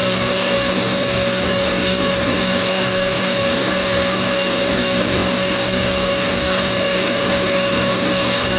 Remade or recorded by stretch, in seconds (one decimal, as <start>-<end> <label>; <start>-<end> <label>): 0.0-8.6 remade